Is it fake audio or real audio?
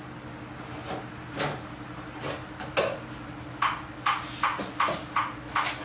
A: real